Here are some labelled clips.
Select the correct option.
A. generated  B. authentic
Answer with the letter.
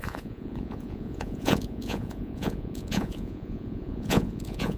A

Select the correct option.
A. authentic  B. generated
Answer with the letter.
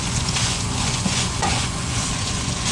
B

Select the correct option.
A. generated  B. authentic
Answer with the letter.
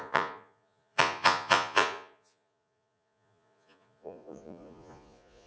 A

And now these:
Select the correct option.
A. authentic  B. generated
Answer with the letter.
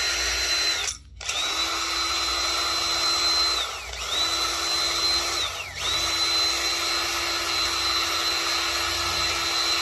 A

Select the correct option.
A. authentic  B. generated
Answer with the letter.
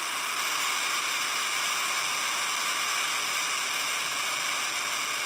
A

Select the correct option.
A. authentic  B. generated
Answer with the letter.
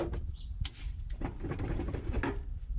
A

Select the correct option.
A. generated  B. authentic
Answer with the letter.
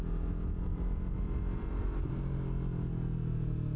B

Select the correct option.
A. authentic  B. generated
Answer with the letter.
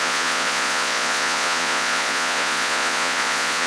B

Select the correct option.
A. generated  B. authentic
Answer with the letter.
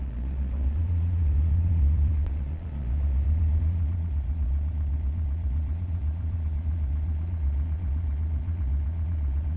A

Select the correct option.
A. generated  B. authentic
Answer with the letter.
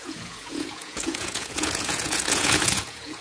A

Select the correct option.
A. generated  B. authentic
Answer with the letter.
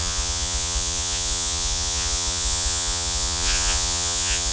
A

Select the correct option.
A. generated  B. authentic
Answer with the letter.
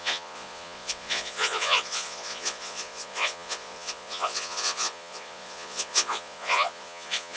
A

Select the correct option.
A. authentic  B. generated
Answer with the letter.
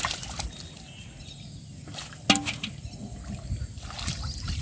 A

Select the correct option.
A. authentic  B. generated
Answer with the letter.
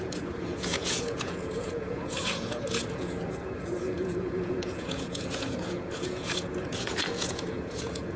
B